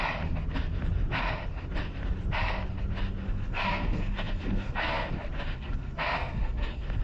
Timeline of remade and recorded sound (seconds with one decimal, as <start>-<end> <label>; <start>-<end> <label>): 0.0-3.2 recorded; 3.2-5.1 remade; 5.1-5.5 recorded; 5.5-7.0 remade